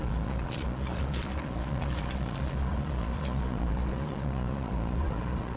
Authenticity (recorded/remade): remade